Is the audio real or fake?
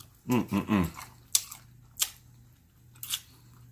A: real